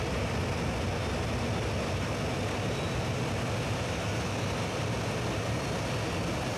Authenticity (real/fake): real